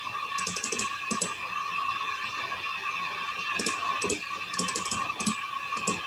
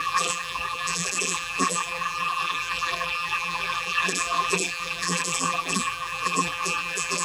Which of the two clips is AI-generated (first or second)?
second